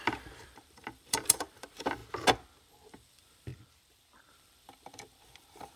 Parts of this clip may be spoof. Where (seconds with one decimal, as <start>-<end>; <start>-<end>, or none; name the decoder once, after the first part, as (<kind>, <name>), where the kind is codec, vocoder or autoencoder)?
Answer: 0.0-2.0 (vocoder, BigVGAN v2); 2.9-3.5; 4.3-5.8